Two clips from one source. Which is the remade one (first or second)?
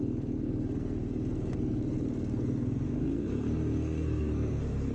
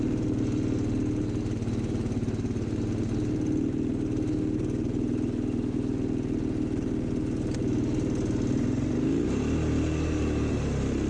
first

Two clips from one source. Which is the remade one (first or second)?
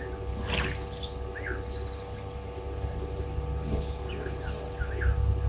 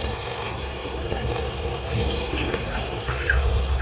second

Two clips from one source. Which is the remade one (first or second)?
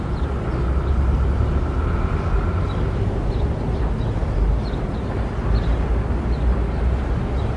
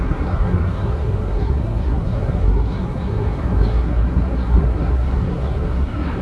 second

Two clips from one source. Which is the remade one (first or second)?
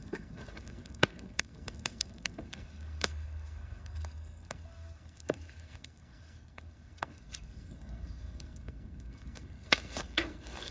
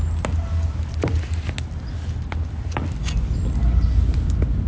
first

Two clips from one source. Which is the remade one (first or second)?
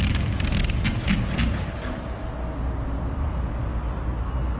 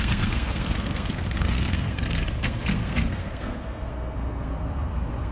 second